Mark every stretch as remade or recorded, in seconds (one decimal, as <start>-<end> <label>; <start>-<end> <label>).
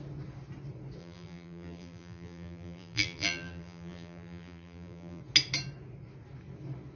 0.0-1.0 recorded; 1.0-5.2 remade; 5.2-7.0 recorded